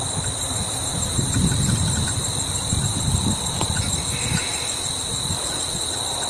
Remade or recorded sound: remade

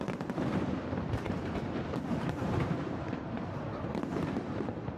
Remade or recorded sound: remade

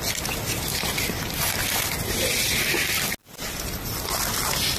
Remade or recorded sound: recorded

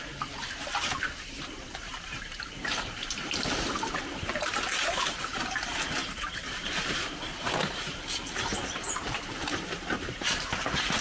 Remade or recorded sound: remade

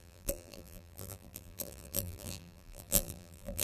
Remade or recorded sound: remade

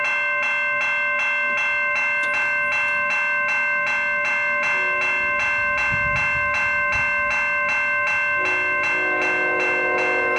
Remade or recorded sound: recorded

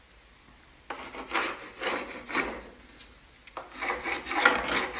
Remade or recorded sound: recorded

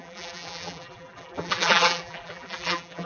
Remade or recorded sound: remade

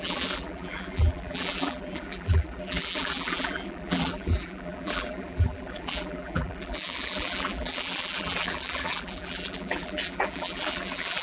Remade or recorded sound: remade